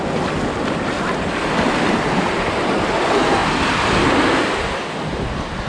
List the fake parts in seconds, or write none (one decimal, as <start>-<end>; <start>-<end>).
none